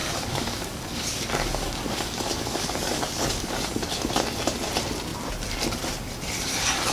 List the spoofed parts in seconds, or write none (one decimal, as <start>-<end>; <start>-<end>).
0.0-4.1